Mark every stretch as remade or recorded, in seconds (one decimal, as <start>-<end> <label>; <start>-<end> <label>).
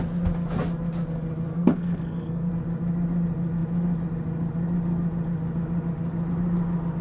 0.0-1.5 recorded; 1.5-2.5 remade; 2.5-7.0 recorded